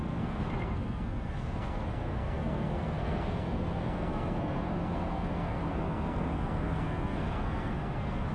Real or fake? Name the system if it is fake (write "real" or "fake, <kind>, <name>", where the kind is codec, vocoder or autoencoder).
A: fake, codec, SNAC